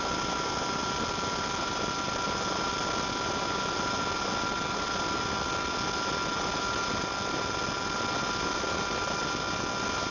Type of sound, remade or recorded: recorded